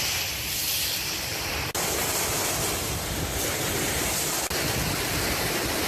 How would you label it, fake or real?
real